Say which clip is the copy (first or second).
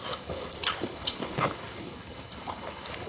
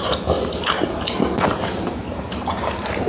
first